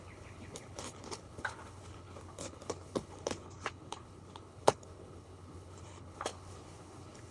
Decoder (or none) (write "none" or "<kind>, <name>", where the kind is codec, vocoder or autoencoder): codec, HILCodec